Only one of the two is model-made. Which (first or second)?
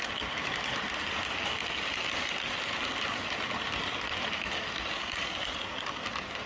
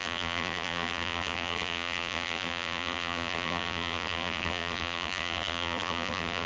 second